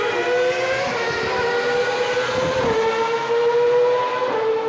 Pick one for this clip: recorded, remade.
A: recorded